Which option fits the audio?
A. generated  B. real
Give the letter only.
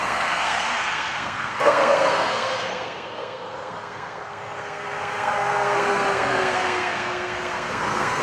A